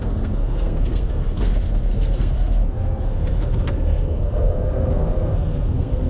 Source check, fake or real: fake